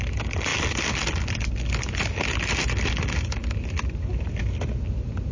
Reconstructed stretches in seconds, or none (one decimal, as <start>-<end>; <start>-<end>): none